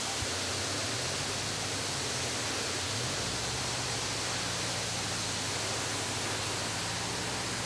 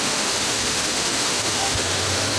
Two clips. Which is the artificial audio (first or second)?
second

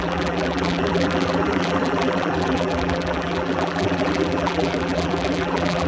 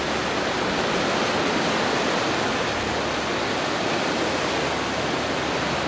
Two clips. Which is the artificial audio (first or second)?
first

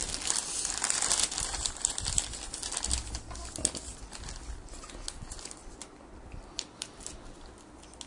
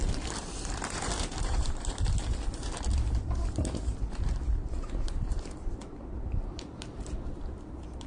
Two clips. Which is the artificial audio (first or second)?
second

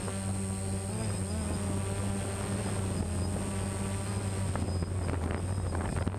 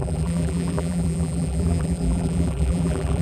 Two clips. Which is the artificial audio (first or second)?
second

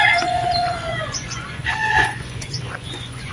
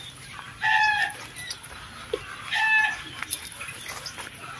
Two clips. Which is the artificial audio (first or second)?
first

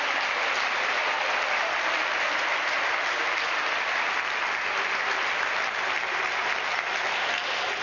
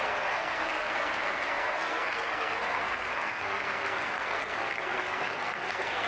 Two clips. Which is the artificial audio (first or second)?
second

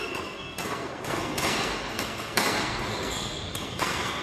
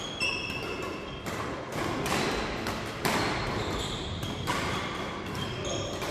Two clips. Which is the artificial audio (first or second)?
first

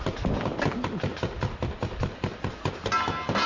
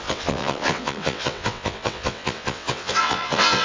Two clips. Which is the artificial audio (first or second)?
second